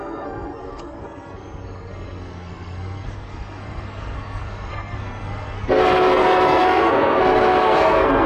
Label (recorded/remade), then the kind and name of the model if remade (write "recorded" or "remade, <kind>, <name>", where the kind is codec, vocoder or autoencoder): remade, codec, SNAC